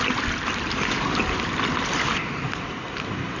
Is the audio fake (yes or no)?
no